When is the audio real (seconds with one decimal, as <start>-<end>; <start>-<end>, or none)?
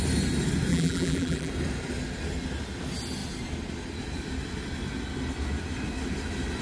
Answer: 0.0-0.7; 1.5-6.6